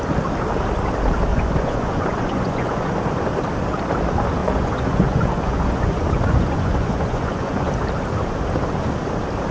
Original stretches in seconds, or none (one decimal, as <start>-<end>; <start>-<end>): 0.0-1.3; 2.9-4.4; 7.7-9.5